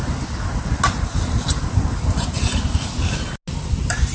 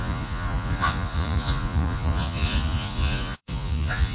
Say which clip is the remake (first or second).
second